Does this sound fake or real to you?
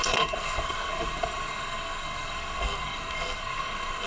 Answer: fake